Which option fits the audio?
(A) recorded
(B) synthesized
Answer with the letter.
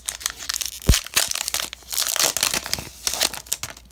A